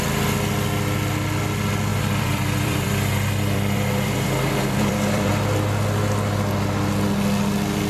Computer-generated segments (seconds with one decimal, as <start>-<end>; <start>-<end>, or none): 1.9-5.3